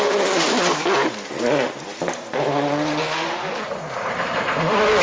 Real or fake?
real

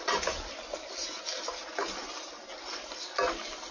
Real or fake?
real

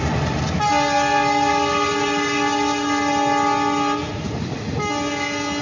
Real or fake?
real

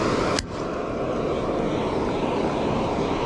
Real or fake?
real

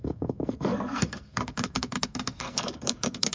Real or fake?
fake